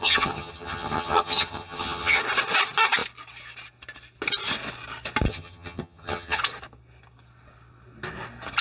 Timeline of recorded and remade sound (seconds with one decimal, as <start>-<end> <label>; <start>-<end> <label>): 0.0-2.2 remade; 2.2-5.3 recorded; 5.3-6.4 remade; 6.4-8.6 recorded